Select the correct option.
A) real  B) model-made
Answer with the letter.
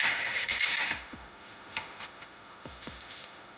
B